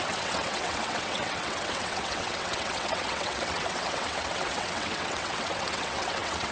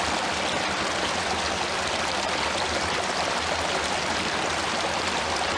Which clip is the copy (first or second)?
first